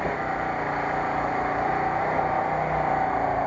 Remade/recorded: recorded